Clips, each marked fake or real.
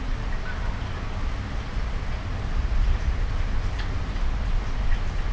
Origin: real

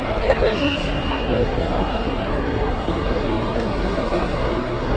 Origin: fake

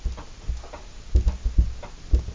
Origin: real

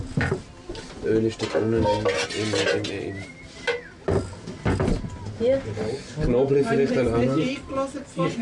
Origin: real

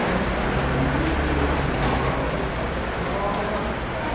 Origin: real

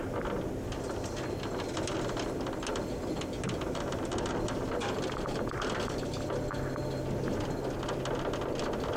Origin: real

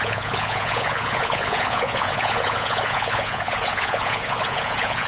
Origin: fake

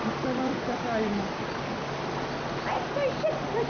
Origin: real